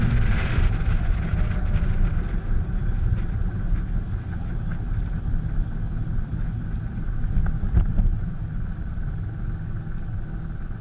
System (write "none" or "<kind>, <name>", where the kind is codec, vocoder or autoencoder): none